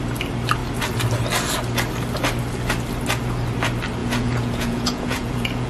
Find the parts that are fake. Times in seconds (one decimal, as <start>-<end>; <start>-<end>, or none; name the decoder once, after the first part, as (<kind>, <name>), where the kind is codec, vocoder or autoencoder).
4.0-5.7 (vocoder, Vocos)